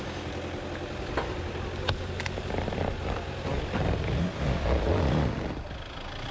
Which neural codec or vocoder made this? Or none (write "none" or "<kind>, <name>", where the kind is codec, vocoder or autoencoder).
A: none